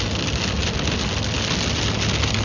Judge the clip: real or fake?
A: real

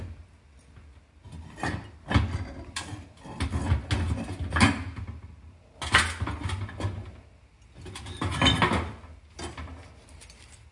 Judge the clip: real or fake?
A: real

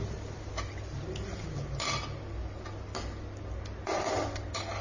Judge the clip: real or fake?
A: real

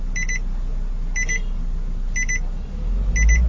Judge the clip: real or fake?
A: real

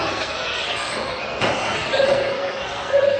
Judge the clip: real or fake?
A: fake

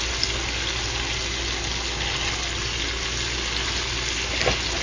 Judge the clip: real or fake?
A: real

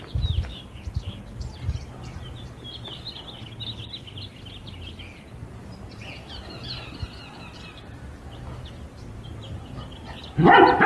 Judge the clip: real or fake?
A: real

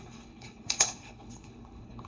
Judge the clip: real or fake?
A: fake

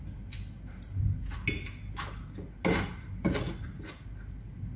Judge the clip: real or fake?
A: real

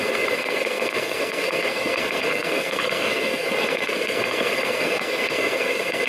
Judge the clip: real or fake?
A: fake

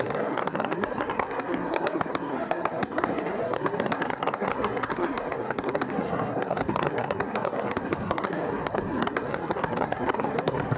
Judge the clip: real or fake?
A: fake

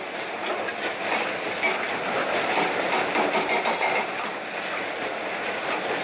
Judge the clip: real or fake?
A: real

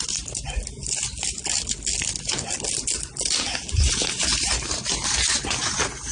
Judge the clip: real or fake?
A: real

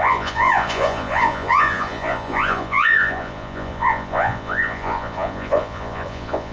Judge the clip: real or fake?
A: fake